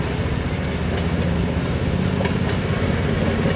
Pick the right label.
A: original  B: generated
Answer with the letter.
A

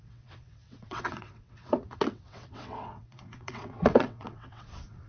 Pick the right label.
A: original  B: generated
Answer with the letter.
B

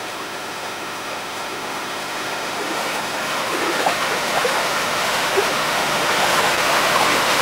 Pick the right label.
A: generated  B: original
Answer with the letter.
A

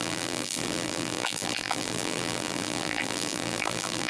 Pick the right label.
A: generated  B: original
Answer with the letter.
A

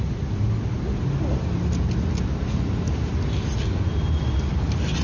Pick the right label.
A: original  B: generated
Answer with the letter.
A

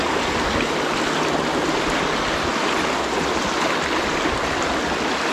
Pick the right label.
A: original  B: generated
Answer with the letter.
A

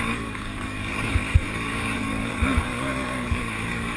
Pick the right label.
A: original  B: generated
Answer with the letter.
B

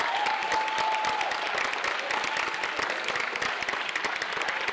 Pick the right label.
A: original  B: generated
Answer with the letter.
A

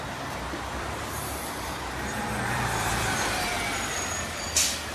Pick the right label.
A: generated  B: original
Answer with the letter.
A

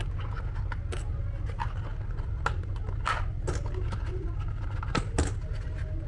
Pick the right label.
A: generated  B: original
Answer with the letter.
B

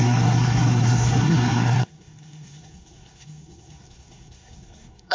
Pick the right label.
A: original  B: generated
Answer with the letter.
B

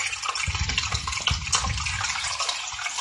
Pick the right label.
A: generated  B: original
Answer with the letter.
B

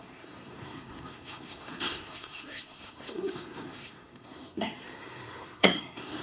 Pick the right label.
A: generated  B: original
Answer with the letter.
A